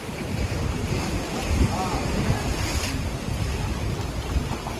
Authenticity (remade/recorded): recorded